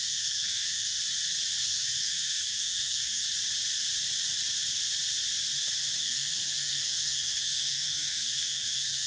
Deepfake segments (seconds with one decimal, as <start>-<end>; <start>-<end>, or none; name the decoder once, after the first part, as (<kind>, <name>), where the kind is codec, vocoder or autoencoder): 0.0-1.0 (codec, SNAC); 1.6-3.2; 6.0-9.1